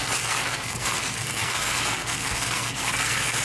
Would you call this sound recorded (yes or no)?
no